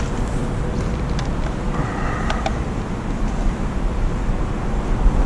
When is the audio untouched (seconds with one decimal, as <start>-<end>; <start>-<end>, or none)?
0.0-5.3